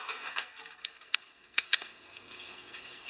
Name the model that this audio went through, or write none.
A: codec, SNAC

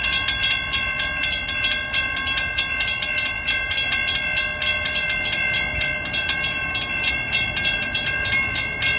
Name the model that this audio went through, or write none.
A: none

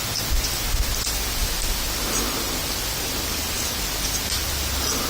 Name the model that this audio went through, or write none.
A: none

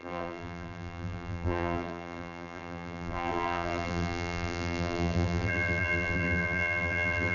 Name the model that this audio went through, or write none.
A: vocoder, BigVGAN v2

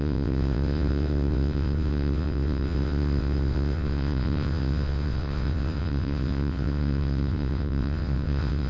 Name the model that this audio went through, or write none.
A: vocoder, WaveNeXt